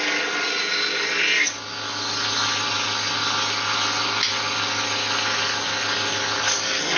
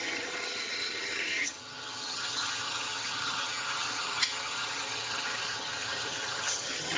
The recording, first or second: first